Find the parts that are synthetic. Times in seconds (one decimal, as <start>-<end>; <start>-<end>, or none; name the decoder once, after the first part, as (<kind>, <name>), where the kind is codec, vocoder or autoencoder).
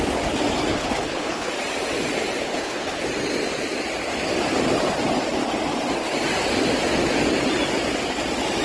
0.7-1.5 (codec, HILCodec); 2.4-3.0